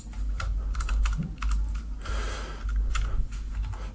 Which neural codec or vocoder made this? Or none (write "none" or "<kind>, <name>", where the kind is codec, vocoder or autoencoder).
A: none